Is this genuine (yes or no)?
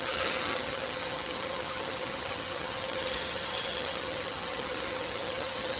no